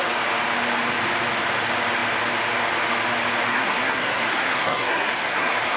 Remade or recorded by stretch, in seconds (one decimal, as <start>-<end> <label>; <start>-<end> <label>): 0.0-3.5 recorded; 3.5-5.8 remade